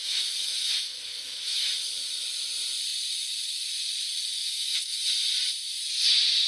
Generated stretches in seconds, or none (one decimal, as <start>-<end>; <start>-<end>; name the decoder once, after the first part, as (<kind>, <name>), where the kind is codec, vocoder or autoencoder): 0.0-1.7 (autoencoder, DAC-VAE); 4.4-5.0